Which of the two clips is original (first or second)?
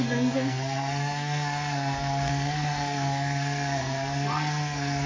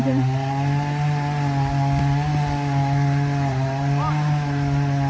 second